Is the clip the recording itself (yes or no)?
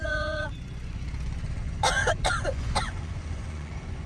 no